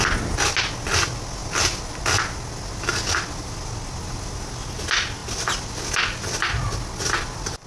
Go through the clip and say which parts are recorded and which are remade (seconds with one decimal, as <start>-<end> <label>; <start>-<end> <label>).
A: 0.0-7.7 recorded